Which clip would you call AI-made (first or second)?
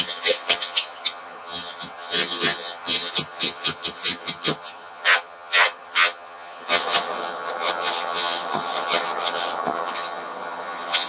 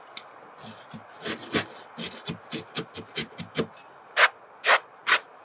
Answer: first